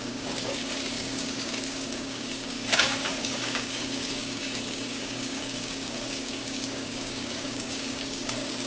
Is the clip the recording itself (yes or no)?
no